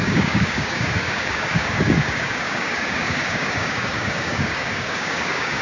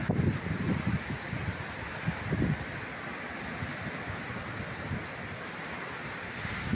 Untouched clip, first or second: second